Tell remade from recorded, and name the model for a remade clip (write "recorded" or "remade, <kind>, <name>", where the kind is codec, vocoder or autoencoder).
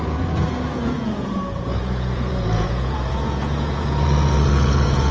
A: remade, vocoder, Vocos